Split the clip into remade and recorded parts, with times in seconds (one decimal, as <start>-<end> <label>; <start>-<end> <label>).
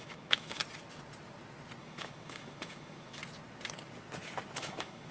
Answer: 0.0-0.6 remade; 0.6-1.8 recorded; 1.8-3.2 remade; 3.2-4.6 recorded; 4.6-5.1 remade